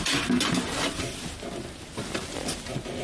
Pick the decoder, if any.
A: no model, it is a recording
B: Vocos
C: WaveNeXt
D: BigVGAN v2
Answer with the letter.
A